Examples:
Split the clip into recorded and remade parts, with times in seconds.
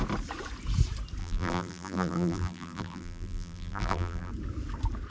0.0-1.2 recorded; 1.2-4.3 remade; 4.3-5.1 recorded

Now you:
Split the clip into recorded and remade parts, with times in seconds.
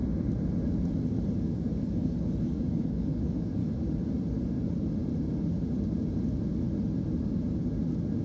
0.0-1.4 recorded; 1.4-3.6 remade; 3.6-8.2 recorded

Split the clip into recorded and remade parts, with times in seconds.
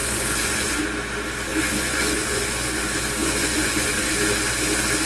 0.0-0.8 remade; 0.8-1.5 recorded; 1.5-2.8 remade; 2.8-3.2 recorded; 3.2-4.1 remade; 4.1-5.1 recorded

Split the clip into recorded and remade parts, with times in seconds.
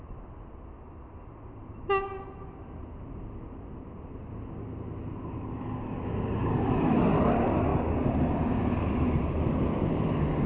0.0-10.5 recorded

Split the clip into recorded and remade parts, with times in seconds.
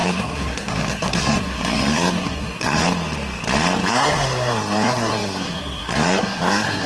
0.0-2.8 remade; 2.8-3.9 recorded; 3.9-6.9 remade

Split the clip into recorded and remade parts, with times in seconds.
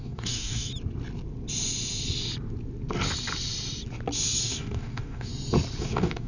0.0-0.7 remade; 0.7-4.4 recorded; 4.4-5.3 remade; 5.3-5.8 recorded; 5.8-6.3 remade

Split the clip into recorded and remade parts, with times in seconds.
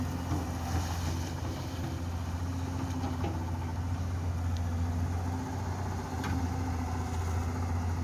0.0-8.0 recorded